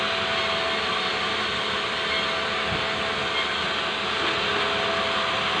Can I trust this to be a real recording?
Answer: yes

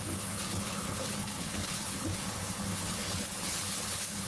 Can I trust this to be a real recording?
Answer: no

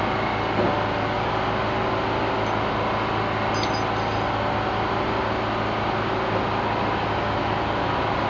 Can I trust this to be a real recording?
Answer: yes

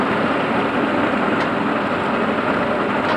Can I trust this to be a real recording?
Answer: yes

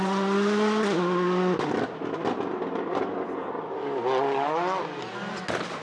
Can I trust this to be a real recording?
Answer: yes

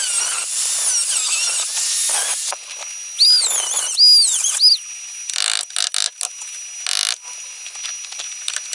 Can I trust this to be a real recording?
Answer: yes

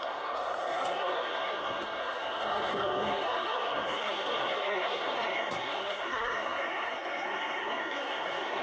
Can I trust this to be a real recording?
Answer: no